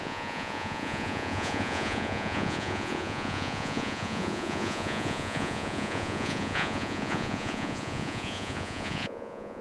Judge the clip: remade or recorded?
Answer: remade